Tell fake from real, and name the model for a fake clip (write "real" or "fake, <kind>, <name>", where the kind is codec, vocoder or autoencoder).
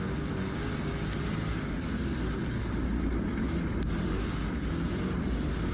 real